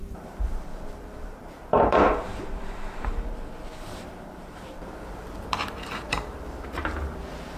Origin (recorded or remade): remade